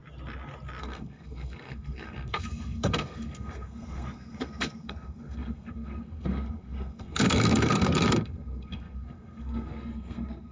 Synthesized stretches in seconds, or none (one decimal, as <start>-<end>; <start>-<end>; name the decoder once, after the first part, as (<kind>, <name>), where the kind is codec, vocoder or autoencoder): 0.8-10.5 (codec, SNAC)